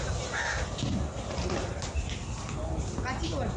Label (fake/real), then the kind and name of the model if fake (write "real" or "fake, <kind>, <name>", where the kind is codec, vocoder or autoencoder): real